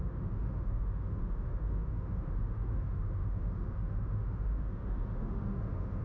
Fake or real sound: fake